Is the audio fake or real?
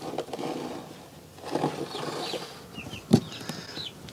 real